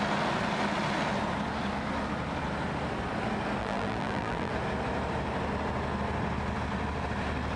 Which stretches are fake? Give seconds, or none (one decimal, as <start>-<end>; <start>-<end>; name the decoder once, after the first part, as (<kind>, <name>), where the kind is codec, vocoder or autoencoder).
3.6-4.5 (vocoder, BigVGAN v2)